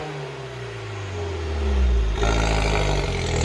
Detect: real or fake real